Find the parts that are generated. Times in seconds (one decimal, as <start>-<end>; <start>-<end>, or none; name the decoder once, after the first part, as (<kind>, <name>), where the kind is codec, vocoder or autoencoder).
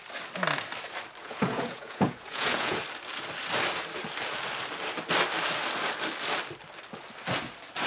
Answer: 1.2-2.8 (vocoder, Vocos)